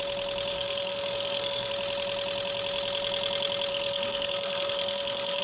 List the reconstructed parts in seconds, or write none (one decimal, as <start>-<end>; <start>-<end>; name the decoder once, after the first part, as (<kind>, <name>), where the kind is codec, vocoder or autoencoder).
0.5-1.7 (codec, SNAC); 3.7-5.4